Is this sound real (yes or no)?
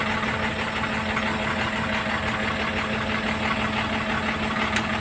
yes